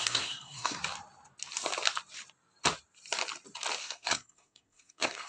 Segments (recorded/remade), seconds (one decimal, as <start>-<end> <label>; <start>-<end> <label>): 0.0-0.8 remade; 0.8-3.8 recorded; 3.8-5.3 remade

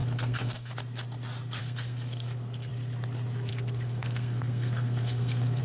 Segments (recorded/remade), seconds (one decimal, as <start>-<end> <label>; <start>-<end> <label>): 0.0-0.7 remade; 0.7-1.6 recorded; 1.6-2.7 remade; 2.7-3.5 recorded; 3.5-5.6 remade

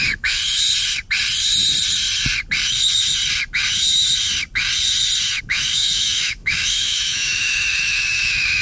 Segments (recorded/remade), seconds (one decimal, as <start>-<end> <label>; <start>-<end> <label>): 0.0-0.4 remade; 0.4-5.4 recorded; 5.4-8.6 remade

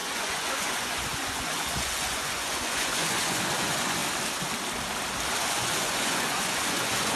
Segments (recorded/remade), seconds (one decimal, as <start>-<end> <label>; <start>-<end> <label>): 0.0-4.0 remade; 4.0-5.4 recorded; 5.4-7.2 remade